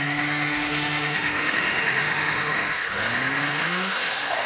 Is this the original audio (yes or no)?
no